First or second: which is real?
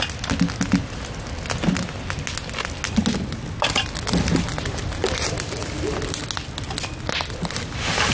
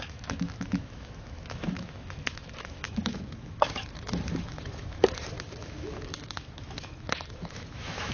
first